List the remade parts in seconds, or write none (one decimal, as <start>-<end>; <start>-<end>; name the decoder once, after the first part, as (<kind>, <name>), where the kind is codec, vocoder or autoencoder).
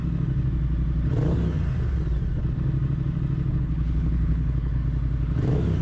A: 3.5-4.8 (codec, HILCodec)